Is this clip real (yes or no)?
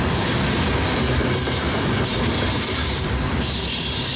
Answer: no